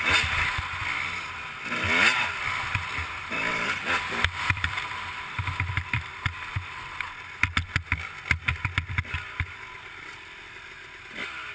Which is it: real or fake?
real